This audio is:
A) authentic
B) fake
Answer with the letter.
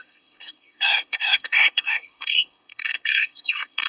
B